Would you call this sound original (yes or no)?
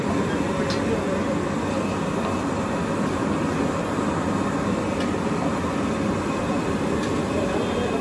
yes